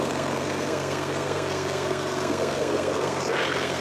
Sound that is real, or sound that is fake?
fake